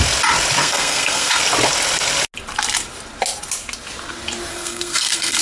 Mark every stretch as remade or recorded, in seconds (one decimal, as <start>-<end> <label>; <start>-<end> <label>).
0.0-0.6 recorded; 0.6-1.4 remade; 1.4-4.5 recorded; 4.5-5.4 remade

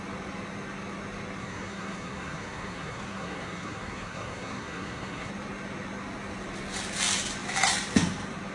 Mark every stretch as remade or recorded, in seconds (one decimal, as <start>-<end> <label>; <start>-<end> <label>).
0.0-1.4 recorded; 1.4-5.3 remade; 5.3-8.5 recorded

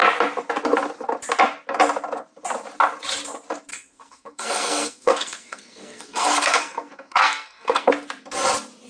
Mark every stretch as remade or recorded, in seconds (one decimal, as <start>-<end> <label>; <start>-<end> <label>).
0.0-3.7 recorded; 3.7-7.9 remade; 7.9-8.9 recorded

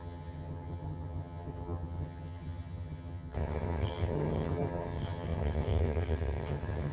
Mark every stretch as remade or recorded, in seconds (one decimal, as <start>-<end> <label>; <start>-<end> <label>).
0.0-6.9 remade

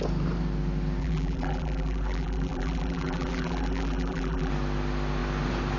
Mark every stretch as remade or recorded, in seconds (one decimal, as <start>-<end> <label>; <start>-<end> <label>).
0.0-1.0 recorded; 1.0-4.5 remade; 4.5-5.8 recorded

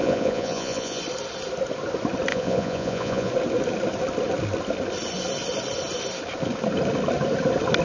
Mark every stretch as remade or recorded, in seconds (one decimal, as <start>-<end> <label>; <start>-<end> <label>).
0.0-1.0 remade; 1.0-2.3 recorded; 2.3-3.3 remade; 3.3-7.8 recorded